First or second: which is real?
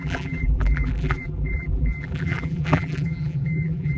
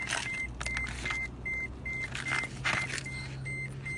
second